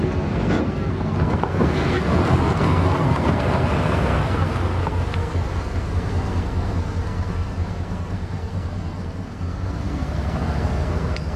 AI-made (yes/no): yes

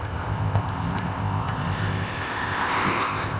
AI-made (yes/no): yes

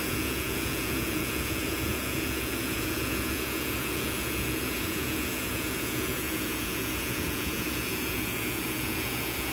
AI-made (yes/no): yes